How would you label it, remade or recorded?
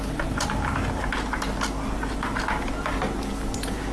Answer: recorded